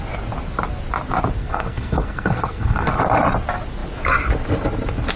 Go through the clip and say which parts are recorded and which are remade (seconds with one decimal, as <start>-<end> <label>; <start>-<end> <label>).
0.0-1.4 recorded; 1.4-2.9 remade; 2.9-5.2 recorded